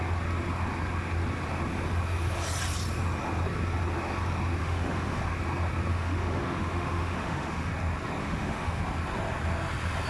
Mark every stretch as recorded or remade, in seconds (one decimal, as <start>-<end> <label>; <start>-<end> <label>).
0.0-4.6 recorded; 4.6-5.2 remade; 5.2-5.9 recorded; 5.9-7.7 remade; 7.7-8.2 recorded; 8.2-8.8 remade; 8.8-10.1 recorded